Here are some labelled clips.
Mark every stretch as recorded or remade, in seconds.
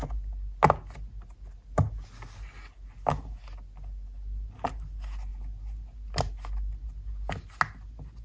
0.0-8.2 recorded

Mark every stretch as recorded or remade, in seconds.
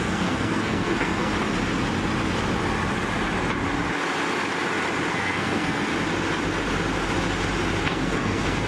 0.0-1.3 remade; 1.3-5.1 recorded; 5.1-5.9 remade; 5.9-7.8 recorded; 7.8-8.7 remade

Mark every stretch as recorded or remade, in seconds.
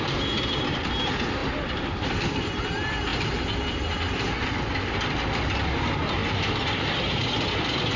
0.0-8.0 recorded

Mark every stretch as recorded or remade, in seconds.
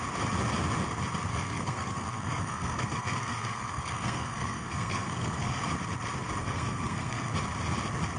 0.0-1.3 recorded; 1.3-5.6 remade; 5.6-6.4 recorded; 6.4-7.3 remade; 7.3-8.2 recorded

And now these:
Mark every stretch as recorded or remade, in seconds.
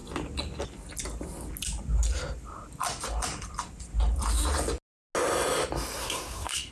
0.0-6.0 recorded; 6.0-6.7 remade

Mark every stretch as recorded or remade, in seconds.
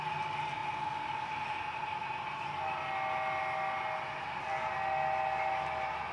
0.0-6.1 recorded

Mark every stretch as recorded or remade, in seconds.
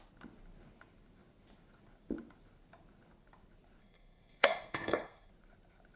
0.0-3.8 recorded; 3.8-5.3 remade; 5.3-6.0 recorded